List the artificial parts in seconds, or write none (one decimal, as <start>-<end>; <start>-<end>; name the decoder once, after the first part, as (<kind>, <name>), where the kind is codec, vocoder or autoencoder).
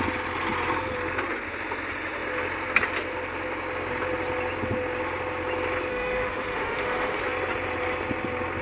5.9-7.2 (autoencoder, DAC-VAE)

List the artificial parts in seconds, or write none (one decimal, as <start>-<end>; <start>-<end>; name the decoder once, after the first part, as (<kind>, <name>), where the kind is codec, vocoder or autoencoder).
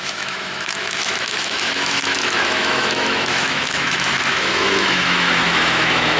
0.0-6.2 (autoencoder, DAC-VAE)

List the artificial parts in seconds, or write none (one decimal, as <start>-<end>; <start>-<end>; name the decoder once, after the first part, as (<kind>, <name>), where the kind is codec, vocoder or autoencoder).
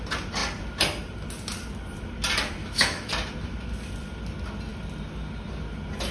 2.6-3.1 (autoencoder, DAC-VAE)